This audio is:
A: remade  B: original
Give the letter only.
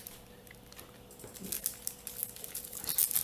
B